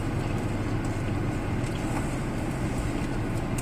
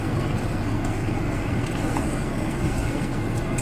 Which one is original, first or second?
first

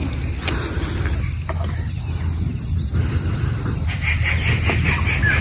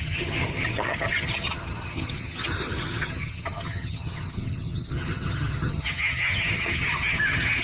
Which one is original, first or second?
first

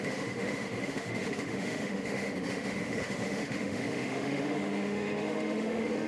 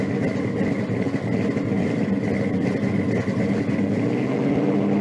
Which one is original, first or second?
second